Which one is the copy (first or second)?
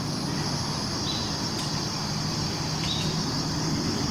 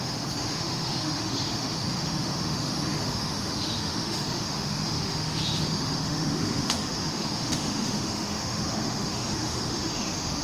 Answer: second